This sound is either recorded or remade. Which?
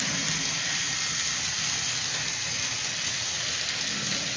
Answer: recorded